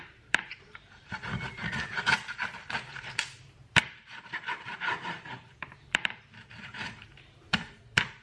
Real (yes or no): no